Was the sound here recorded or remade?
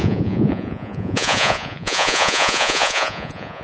remade